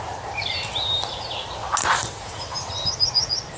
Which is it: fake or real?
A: real